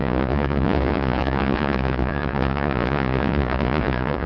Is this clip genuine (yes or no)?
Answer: no